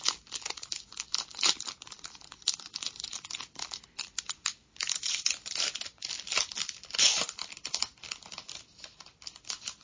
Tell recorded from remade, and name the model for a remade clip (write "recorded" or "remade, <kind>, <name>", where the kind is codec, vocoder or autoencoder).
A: remade, vocoder, BigVGAN v2